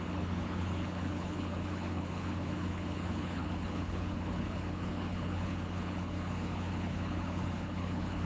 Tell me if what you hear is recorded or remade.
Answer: remade